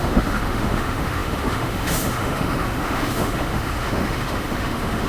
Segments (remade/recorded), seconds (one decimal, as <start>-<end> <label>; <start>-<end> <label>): 0.0-5.1 remade